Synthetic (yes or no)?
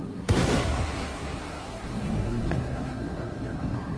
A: yes